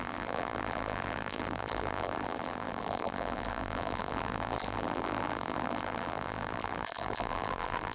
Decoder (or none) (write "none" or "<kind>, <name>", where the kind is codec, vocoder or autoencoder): vocoder, BigVGAN v2